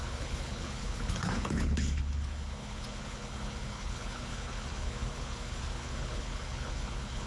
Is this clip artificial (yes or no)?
yes